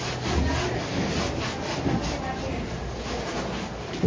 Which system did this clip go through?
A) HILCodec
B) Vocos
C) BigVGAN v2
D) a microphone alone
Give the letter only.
D